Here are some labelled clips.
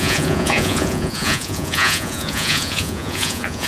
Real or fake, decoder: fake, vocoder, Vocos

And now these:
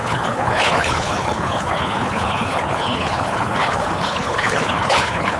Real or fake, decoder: fake, codec, HILCodec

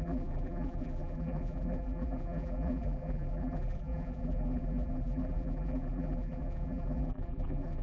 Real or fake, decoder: fake, vocoder, BigVGAN v2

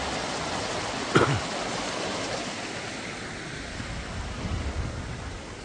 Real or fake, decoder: real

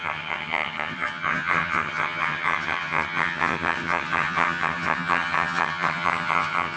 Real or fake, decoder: fake, vocoder, HiFi-GAN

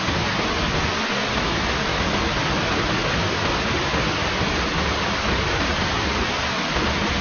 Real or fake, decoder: real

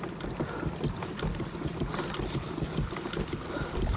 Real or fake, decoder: real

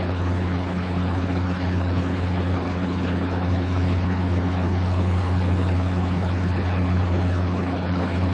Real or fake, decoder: fake, codec, HILCodec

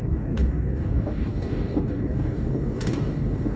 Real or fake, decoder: fake, codec, DAC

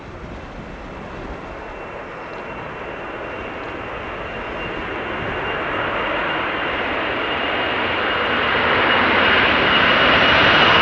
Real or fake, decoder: real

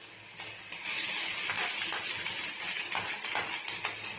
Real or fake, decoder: real